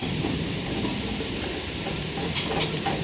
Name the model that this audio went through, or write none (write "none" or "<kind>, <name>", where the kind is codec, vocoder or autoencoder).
none